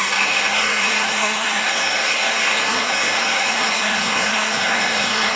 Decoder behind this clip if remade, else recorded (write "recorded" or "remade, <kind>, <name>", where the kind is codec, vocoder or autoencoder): remade, codec, SNAC